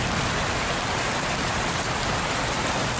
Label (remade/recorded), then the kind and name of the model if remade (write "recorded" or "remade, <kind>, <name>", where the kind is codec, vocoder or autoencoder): recorded